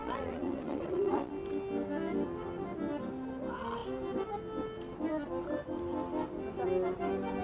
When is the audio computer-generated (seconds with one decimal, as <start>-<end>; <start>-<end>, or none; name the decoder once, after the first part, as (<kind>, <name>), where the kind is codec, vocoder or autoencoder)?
0.0-1.3 (vocoder, Vocos)